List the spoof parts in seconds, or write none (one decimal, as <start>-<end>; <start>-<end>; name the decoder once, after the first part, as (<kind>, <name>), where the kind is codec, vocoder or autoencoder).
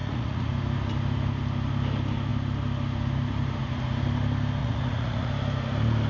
0.0-0.5 (vocoder, Vocos); 4.6-5.3